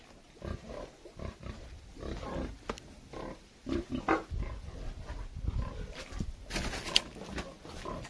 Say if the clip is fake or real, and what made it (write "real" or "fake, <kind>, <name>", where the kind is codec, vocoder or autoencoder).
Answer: real